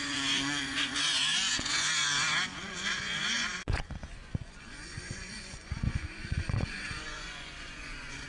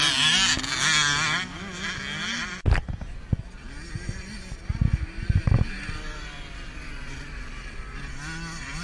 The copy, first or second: first